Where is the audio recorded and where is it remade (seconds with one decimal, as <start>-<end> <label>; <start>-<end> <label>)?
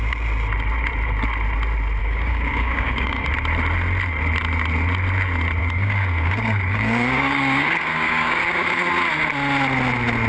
0.0-2.0 recorded; 2.0-3.3 remade; 3.3-5.6 recorded; 5.6-8.9 remade; 8.9-10.3 recorded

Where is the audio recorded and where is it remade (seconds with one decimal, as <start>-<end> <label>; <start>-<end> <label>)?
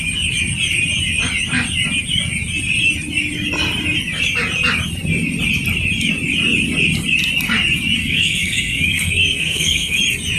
0.0-8.0 recorded; 8.0-10.0 remade; 10.0-10.4 recorded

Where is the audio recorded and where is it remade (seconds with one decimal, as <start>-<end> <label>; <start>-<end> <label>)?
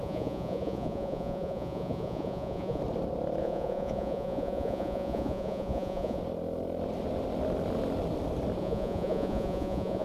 0.0-2.8 remade; 2.8-3.4 recorded; 3.4-6.2 remade; 6.2-8.6 recorded; 8.6-10.0 remade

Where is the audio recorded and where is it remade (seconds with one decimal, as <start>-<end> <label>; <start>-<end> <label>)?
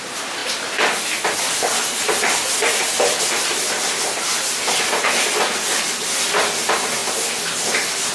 0.0-8.1 recorded